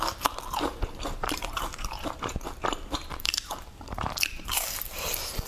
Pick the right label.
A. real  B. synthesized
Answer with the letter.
B